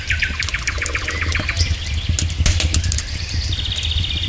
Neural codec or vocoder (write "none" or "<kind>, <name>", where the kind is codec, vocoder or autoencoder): none